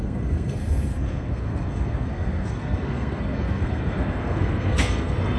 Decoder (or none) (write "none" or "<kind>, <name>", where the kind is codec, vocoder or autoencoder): codec, SNAC